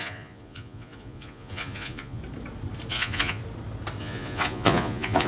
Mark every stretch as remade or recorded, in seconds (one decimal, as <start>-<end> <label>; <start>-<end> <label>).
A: 0.0-2.2 remade; 2.2-2.9 recorded; 2.9-3.4 remade; 3.4-4.0 recorded; 4.0-5.3 remade